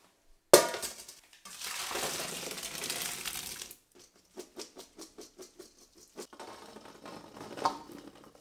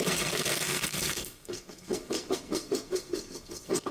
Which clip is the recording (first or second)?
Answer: first